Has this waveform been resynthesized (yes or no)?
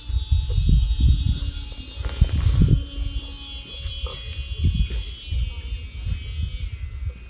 no